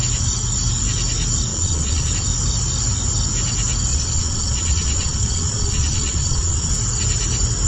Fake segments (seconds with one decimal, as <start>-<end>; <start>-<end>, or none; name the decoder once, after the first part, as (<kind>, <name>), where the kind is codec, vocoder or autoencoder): 1.5-2.1 (vocoder, Vocos); 3.9-6.7